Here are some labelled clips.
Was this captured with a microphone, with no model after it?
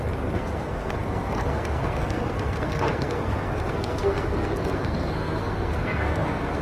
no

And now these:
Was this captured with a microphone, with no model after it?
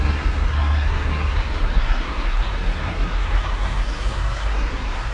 no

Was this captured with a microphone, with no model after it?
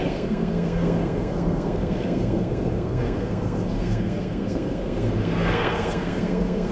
no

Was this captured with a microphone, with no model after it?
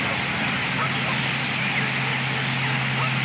yes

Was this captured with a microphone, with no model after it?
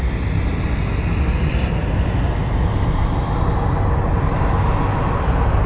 yes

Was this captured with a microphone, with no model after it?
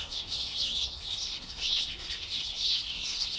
no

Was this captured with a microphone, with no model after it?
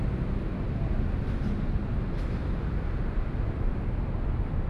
yes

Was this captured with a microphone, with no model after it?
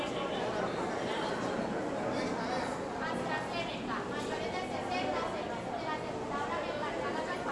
yes